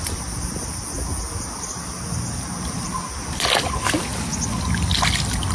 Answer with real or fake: real